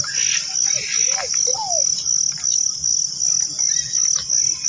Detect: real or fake real